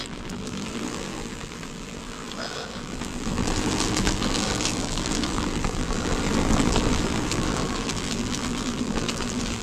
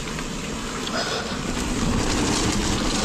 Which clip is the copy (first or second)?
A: first